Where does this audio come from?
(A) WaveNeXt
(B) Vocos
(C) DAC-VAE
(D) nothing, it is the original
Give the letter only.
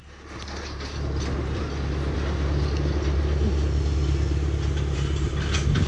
D